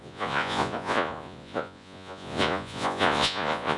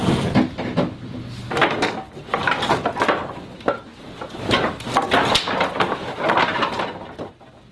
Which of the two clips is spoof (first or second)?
first